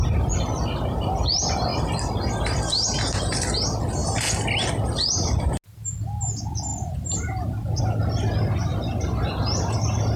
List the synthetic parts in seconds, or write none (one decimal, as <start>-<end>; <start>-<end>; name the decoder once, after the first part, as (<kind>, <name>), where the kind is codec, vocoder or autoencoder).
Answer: none

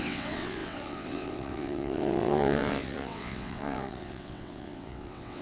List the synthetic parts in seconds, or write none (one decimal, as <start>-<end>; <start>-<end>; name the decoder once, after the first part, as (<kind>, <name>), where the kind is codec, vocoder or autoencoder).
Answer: 0.0-5.4 (vocoder, WaveNeXt)